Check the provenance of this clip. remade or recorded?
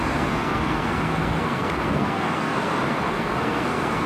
remade